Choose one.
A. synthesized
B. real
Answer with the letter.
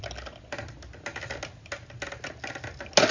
B